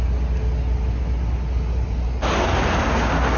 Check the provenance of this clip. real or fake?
real